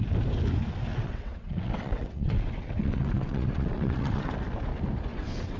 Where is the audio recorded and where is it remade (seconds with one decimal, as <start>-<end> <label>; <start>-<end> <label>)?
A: 0.0-0.9 recorded; 0.9-4.3 remade; 4.3-5.1 recorded; 5.1-5.6 remade